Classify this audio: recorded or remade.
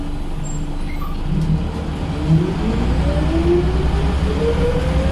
recorded